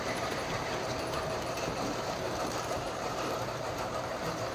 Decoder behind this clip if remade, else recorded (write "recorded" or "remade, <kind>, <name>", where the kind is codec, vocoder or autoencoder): remade, vocoder, BigVGAN v2